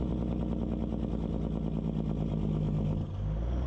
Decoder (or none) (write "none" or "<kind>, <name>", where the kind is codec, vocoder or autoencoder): none